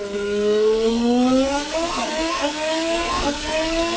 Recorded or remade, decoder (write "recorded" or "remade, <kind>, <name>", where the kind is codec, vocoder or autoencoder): remade, codec, SNAC